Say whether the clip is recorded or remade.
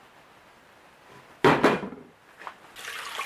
recorded